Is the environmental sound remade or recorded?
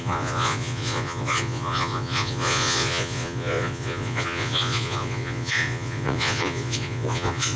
remade